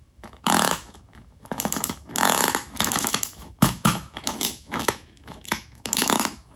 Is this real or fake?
fake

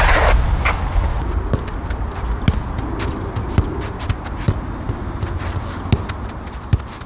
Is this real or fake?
real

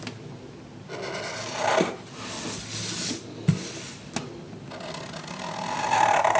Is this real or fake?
real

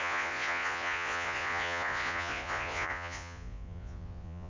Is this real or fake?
fake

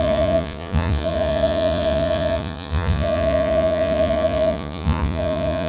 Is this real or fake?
fake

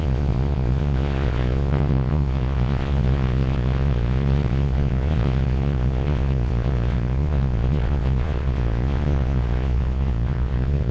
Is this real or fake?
fake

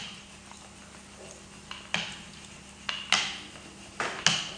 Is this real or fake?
real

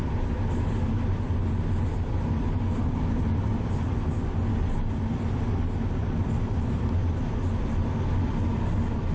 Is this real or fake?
real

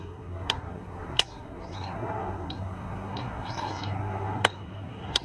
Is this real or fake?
fake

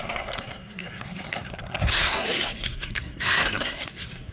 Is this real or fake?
fake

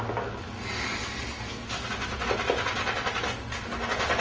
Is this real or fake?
real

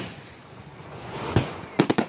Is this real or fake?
fake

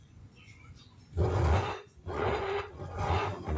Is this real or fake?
fake